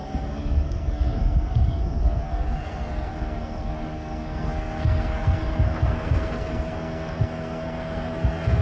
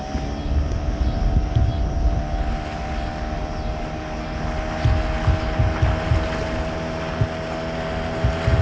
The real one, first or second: second